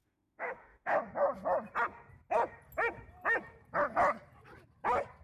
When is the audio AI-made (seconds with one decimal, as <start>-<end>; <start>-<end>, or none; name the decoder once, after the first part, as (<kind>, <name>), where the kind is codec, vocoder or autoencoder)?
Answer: 0.0-1.0 (autoencoder, DAC-VAE)